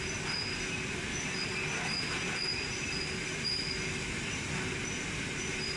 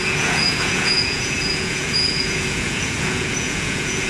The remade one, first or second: second